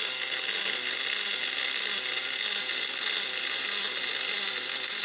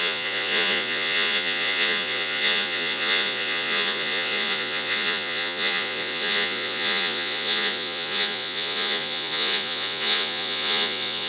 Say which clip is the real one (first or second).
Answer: first